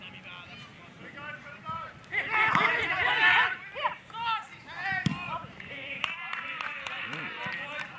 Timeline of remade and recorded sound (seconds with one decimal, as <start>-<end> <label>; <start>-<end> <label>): 0.0-5.4 recorded; 5.4-8.0 remade

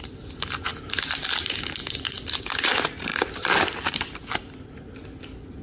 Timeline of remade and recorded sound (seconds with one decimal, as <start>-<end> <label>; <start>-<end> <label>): 0.0-0.7 recorded; 0.7-1.9 remade; 1.9-3.1 recorded; 3.1-3.9 remade; 3.9-5.6 recorded

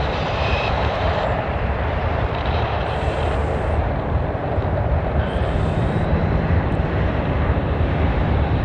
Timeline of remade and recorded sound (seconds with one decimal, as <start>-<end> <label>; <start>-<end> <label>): 0.0-3.4 remade; 3.4-4.4 recorded; 4.4-8.6 remade

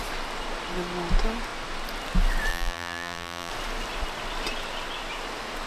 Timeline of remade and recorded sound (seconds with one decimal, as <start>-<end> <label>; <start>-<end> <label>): 0.0-2.5 recorded; 2.5-3.5 remade; 3.5-5.7 recorded